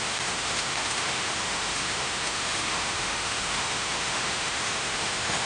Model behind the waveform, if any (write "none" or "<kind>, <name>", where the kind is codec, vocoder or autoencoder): autoencoder, DAC-VAE